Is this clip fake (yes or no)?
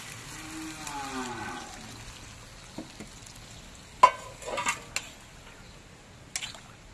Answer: no